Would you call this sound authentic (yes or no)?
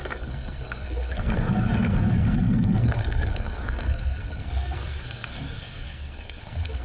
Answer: no